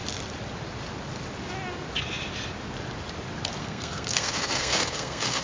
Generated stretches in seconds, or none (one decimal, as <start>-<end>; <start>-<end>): 3.6-5.4